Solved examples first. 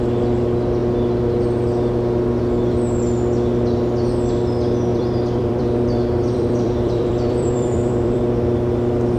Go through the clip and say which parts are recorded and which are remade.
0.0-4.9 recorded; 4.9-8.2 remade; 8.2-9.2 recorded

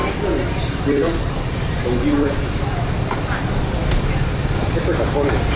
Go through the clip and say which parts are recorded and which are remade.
0.0-3.4 remade; 3.4-3.8 recorded; 3.8-4.8 remade; 4.8-5.6 recorded

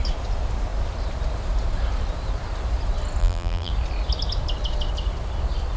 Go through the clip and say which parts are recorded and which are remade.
0.0-3.2 recorded; 3.2-3.7 remade; 3.7-5.8 recorded

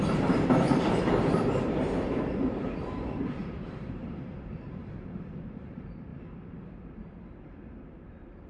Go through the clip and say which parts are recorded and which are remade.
0.0-6.1 remade; 6.1-8.1 recorded; 8.1-8.5 remade

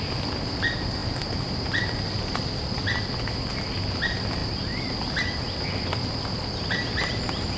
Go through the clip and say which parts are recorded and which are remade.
0.0-4.4 recorded; 4.4-5.4 remade; 5.4-7.6 recorded

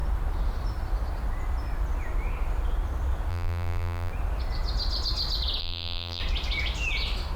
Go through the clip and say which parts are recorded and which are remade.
0.0-3.3 recorded; 3.3-4.1 remade; 4.1-5.6 recorded; 5.6-6.2 remade; 6.2-7.4 recorded

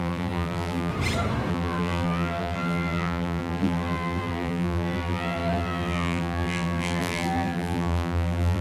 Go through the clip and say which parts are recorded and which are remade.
0.0-0.9 remade; 0.9-1.5 recorded; 1.5-8.6 remade